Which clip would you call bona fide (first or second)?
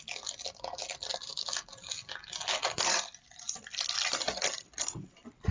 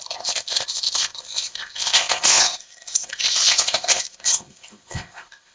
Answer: first